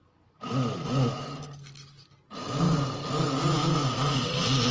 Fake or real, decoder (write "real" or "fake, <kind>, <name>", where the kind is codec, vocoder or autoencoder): real